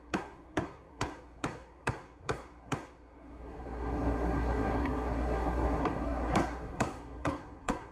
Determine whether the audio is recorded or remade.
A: remade